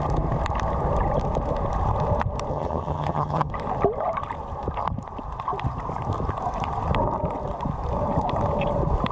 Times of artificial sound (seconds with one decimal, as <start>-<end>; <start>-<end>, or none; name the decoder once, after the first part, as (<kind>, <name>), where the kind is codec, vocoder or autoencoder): 2.5-3.5 (vocoder, HiFi-GAN)